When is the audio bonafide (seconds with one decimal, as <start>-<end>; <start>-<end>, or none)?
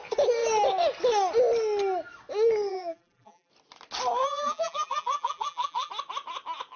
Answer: 0.0-2.7; 3.5-4.2; 5.9-6.8